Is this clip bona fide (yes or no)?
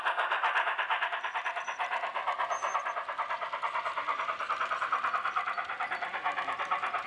yes